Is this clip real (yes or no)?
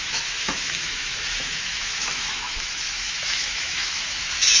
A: no